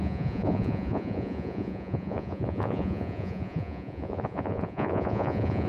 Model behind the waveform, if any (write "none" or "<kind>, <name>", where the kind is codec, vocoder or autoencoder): vocoder, Vocos